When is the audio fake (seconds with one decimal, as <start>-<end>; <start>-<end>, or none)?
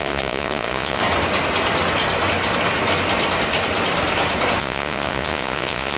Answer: 0.0-1.0; 4.6-6.0